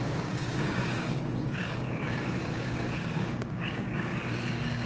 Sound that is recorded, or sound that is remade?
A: remade